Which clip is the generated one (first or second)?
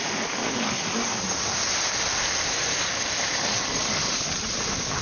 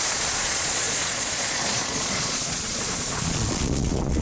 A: second